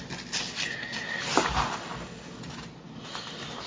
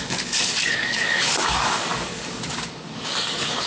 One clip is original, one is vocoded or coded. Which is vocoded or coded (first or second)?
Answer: second